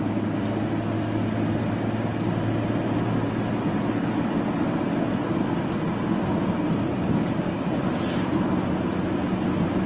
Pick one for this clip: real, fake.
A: real